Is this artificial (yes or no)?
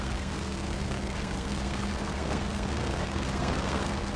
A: yes